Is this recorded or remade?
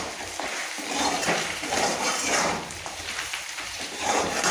remade